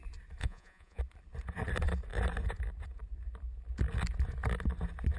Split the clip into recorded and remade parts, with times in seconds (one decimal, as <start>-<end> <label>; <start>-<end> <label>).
0.0-0.4 recorded; 0.4-1.0 remade; 1.0-5.2 recorded